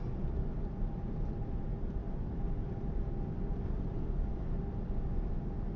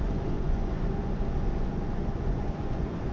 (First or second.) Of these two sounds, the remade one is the second